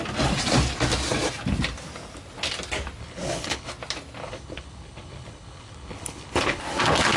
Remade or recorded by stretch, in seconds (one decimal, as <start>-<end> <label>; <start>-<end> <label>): 0.0-3.0 recorded; 3.0-3.7 remade; 3.7-4.2 recorded; 4.2-6.6 remade; 6.6-7.2 recorded